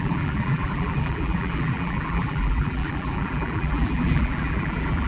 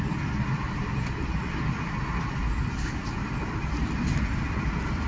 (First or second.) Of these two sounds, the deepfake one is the first